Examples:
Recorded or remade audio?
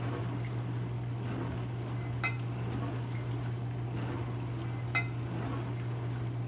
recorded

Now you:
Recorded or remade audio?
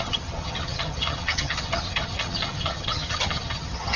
remade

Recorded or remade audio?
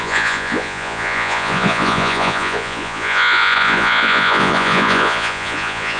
remade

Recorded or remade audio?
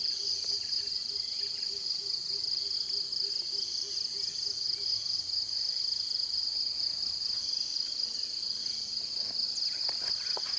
recorded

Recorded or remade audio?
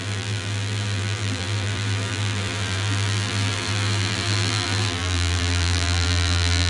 remade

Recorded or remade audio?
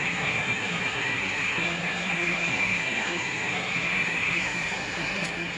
remade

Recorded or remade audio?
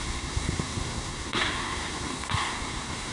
remade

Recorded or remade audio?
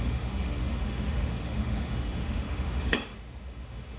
remade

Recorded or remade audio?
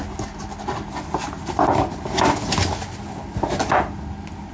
recorded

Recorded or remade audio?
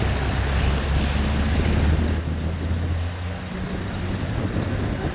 recorded